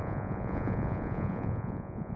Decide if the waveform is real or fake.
fake